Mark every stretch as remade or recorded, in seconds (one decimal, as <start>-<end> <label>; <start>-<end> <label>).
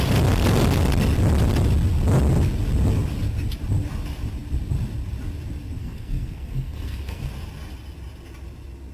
0.0-5.8 recorded; 5.8-7.3 remade; 7.3-8.9 recorded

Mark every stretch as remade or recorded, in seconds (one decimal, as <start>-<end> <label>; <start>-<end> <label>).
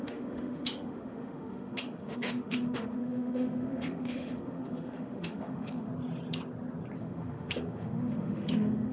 0.0-5.9 remade; 5.9-7.0 recorded; 7.0-8.9 remade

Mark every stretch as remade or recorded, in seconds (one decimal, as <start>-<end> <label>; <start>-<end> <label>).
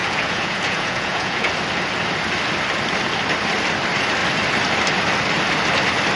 0.0-1.5 remade; 1.5-6.2 recorded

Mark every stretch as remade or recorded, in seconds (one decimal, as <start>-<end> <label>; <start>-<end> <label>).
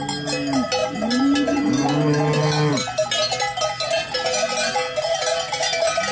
0.0-6.1 recorded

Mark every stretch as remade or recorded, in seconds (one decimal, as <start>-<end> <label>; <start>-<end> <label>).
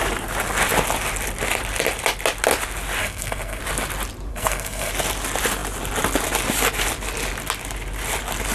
0.0-3.0 recorded; 3.0-3.6 remade; 3.6-4.3 recorded; 4.3-4.9 remade; 4.9-8.5 recorded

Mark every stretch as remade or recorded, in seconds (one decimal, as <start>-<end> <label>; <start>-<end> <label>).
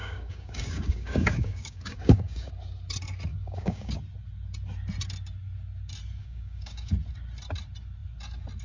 0.0-2.5 remade; 2.5-3.3 recorded; 3.3-3.9 remade; 3.9-6.2 recorded; 6.2-6.9 remade; 6.9-8.6 recorded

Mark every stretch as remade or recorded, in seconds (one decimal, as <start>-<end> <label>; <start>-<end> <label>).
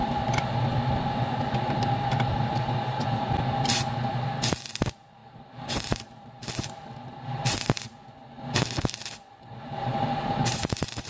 0.0-5.2 recorded; 5.2-6.5 remade; 6.5-11.1 recorded